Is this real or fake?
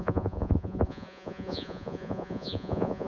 fake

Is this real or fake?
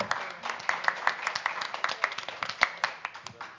real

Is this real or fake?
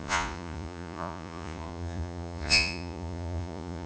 fake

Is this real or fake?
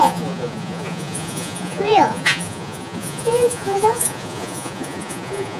fake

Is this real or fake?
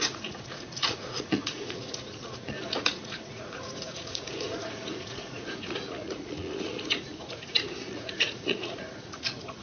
fake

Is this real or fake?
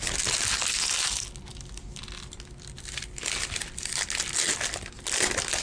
real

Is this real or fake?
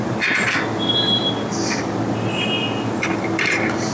real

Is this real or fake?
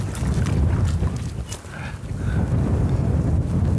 real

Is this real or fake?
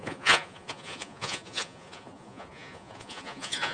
fake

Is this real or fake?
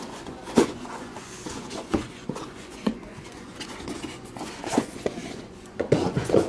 fake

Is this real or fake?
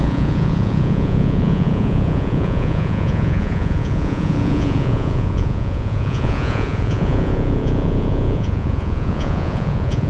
fake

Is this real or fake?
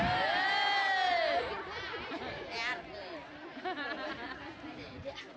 real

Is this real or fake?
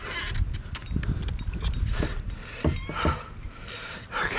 real